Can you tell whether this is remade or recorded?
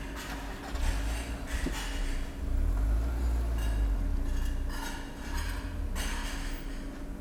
recorded